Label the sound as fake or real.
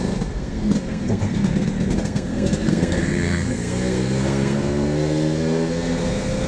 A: fake